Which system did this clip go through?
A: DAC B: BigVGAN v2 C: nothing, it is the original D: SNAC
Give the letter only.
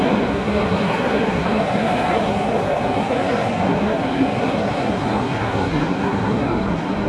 D